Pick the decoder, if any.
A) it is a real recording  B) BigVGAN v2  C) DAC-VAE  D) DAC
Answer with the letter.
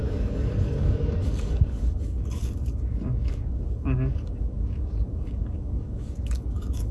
D